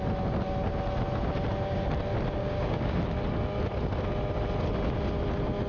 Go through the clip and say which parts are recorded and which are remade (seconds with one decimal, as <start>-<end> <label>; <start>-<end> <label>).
0.0-2.4 recorded; 2.4-3.0 remade; 3.0-5.7 recorded